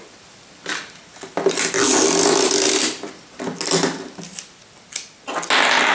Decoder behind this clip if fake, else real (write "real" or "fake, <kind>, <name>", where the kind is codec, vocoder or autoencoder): real